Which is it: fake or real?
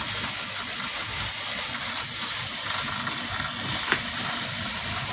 real